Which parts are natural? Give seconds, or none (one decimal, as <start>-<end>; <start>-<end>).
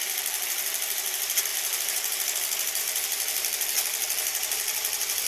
none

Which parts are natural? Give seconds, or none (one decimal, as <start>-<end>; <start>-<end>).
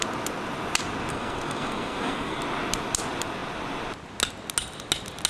0.0-1.1; 2.4-5.3